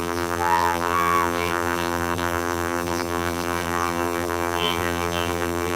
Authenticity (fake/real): fake